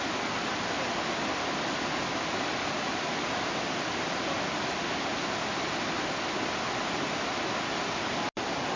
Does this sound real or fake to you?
real